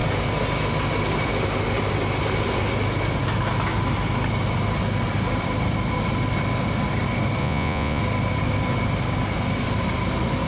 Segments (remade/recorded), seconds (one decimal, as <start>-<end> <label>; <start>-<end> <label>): 0.0-7.4 recorded; 7.4-8.0 remade; 8.0-10.5 recorded